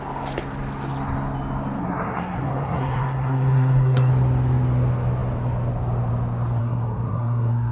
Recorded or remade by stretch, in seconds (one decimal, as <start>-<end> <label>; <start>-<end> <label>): 0.0-1.8 recorded; 1.8-4.1 remade; 4.1-6.6 recorded; 6.6-7.7 remade